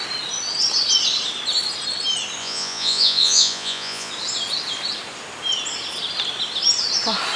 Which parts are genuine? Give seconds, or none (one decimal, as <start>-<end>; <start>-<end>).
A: 0.0-2.4; 4.1-7.4